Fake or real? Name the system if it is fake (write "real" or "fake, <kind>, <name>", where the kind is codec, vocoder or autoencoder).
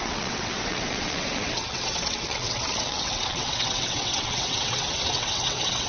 fake, vocoder, WaveNeXt